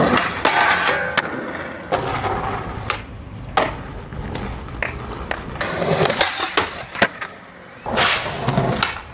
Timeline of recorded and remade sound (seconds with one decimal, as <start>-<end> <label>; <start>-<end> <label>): 0.0-9.1 recorded